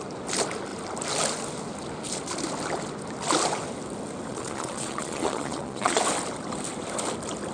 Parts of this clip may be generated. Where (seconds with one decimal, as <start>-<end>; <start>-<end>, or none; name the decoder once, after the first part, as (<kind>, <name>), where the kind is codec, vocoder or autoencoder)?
4.3-6.0 (vocoder, Vocos)